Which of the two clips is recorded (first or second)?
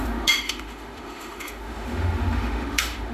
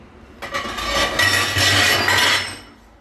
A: second